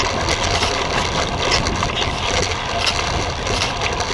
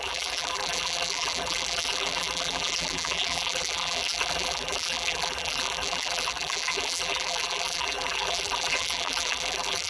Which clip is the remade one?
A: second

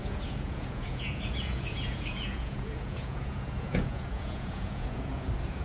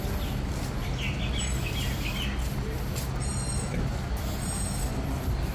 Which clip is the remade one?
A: first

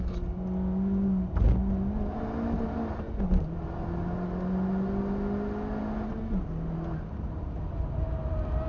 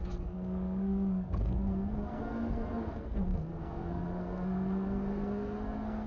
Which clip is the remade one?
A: second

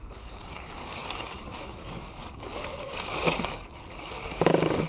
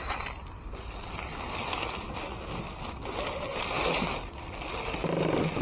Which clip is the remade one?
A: first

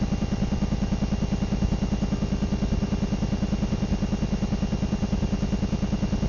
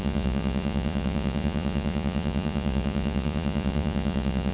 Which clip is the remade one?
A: second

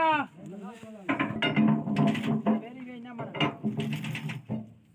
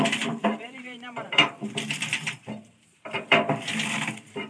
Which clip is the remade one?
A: second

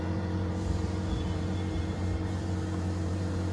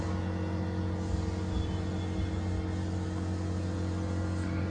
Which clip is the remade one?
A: first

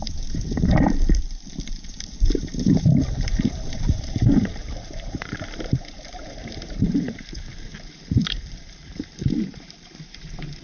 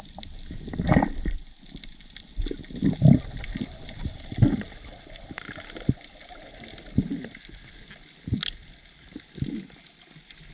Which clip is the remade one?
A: first